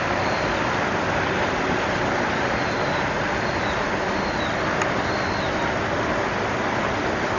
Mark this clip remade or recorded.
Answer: recorded